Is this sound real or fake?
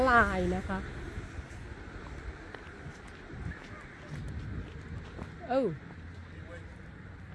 real